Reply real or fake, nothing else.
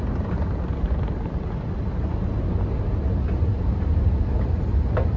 real